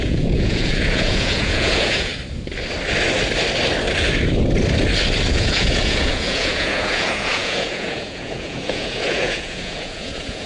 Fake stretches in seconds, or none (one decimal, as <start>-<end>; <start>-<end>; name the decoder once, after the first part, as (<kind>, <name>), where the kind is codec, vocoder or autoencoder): 0.0-2.1 (vocoder, Vocos); 5.3-10.5

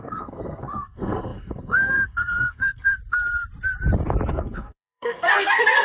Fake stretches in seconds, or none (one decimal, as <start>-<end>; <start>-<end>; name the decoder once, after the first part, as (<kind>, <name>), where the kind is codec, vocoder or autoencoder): 0.0-3.0 (codec, SNAC); 4.3-5.8

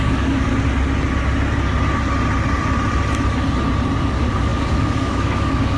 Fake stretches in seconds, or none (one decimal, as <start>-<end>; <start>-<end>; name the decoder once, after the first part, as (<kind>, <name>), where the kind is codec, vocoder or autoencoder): 0.0-0.5 (codec, DAC); 4.0-5.8

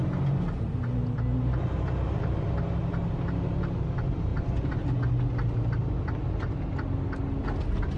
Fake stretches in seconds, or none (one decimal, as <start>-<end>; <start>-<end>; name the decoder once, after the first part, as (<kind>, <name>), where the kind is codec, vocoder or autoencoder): none

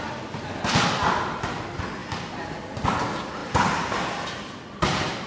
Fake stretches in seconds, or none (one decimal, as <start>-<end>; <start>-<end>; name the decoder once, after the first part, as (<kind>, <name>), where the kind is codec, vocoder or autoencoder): 2.0-2.6 (vocoder, BigVGAN v2); 3.4-5.3

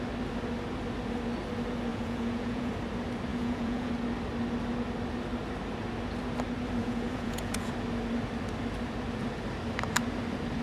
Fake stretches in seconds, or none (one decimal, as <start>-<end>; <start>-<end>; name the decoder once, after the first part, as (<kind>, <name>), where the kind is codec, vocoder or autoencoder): 1.9-2.7 (vocoder, Vocos); 3.3-3.9; 6.8-7.7

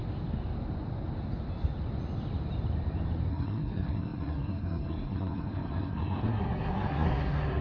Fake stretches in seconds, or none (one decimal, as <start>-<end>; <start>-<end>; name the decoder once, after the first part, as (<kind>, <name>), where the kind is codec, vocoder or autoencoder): 3.3-7.6 (codec, SNAC)